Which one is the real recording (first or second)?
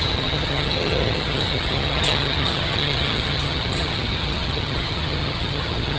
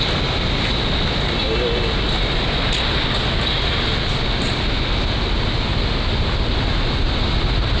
second